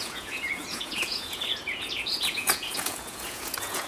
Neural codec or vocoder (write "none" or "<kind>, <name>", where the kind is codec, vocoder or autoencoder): vocoder, Vocos